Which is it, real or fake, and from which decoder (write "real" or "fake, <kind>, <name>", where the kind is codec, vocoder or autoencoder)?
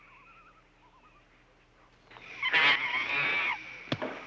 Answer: real